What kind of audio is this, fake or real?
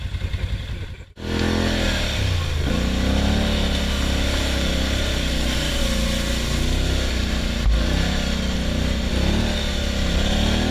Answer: real